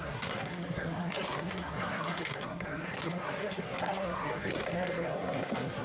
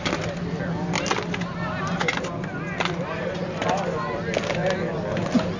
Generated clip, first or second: first